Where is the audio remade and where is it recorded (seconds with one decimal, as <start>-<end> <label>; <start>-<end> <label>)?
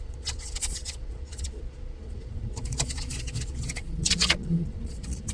0.0-5.3 remade